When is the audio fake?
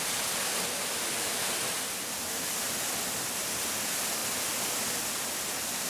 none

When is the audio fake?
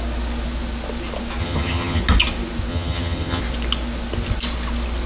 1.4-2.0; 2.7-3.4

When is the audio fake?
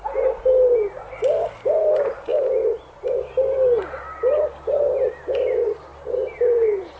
none